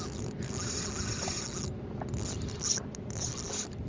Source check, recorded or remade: recorded